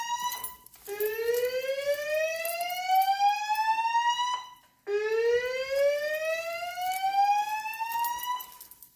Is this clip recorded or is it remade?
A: recorded